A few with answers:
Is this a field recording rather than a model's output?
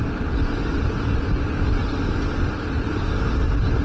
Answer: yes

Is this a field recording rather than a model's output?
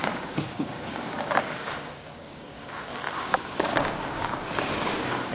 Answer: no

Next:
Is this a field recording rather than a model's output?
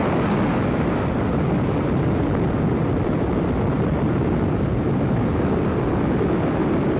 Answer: yes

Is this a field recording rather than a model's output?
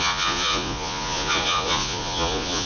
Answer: no